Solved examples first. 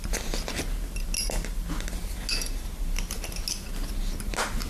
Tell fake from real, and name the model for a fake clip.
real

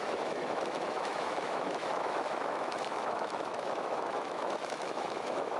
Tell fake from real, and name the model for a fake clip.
fake, autoencoder, DAC-VAE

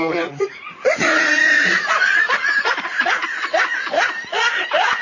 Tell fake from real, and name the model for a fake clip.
fake, vocoder, Vocos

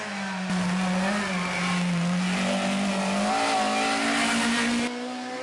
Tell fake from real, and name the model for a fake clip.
real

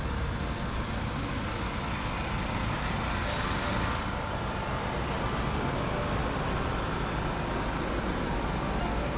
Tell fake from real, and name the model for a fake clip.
real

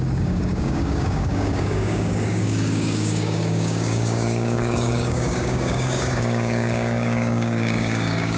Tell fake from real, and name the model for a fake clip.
fake, codec, DAC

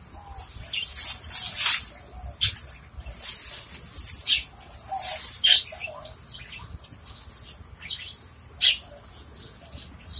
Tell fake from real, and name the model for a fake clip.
real